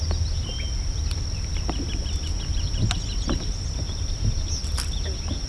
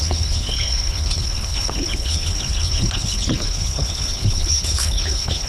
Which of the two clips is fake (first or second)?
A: second